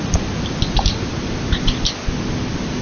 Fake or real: real